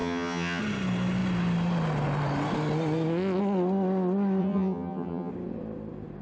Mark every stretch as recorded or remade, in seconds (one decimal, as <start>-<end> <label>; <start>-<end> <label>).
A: 0.0-0.6 remade; 0.6-4.4 recorded; 4.4-5.3 remade; 5.3-6.2 recorded